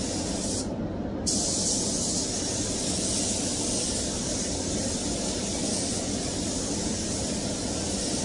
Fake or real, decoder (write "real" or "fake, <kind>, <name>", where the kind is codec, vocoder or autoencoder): real